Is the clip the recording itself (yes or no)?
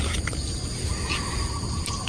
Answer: yes